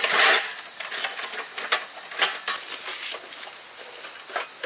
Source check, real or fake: real